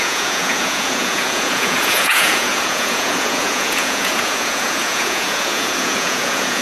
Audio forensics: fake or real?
fake